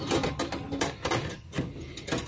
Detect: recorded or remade remade